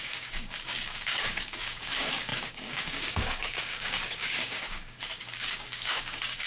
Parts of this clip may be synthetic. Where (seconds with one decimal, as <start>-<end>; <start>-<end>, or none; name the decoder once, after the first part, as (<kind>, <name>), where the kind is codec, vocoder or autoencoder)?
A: 0.0-6.5 (codec, DAC)